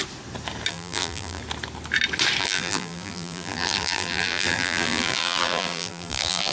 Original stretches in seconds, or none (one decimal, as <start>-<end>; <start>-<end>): 0.0-0.7; 1.4-2.4